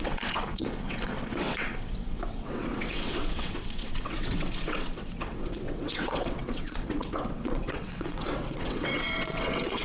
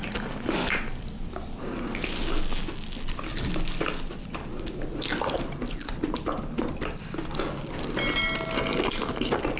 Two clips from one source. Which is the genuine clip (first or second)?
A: second